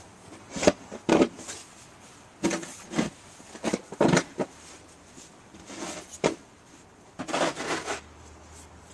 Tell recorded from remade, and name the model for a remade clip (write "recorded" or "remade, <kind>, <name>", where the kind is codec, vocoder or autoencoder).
recorded